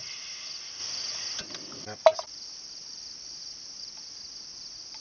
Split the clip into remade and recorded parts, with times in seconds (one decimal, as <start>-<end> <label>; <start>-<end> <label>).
0.0-5.0 recorded